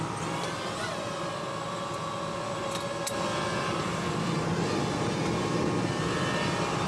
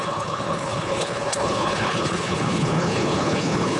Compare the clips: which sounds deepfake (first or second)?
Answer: second